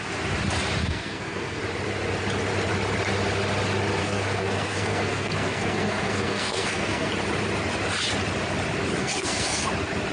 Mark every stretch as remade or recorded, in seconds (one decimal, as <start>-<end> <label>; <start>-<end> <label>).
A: 0.0-0.8 recorded; 0.8-1.6 remade; 1.6-4.0 recorded; 4.0-7.1 remade; 7.1-9.0 recorded; 9.0-9.7 remade; 9.7-10.1 recorded